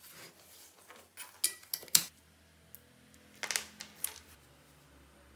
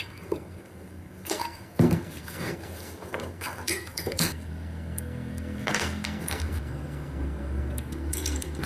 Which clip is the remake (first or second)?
second